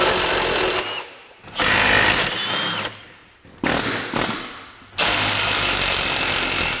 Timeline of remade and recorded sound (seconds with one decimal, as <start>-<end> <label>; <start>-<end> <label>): 0.0-6.8 recorded